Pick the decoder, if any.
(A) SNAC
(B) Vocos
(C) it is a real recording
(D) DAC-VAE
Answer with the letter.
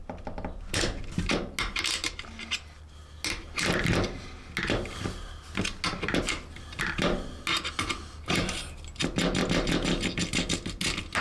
C